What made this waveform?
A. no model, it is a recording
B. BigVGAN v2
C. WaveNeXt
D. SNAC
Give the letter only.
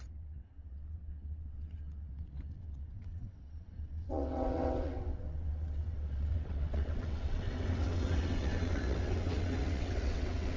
C